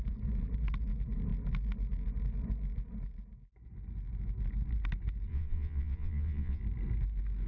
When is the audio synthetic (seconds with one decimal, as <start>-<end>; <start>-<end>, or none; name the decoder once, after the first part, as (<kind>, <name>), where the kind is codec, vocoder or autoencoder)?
5.3-6.6 (vocoder, Vocos)